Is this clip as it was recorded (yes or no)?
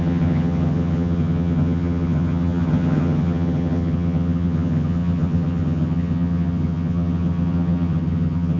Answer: no